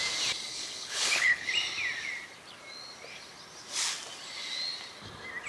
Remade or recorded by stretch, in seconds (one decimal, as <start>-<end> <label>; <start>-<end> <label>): 0.0-0.5 recorded; 0.5-1.5 remade; 1.5-5.5 recorded